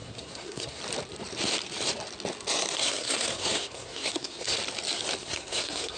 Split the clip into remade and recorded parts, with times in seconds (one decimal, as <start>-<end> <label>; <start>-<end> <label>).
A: 0.0-0.8 remade; 0.8-2.8 recorded; 2.8-4.6 remade; 4.6-5.2 recorded; 5.2-6.0 remade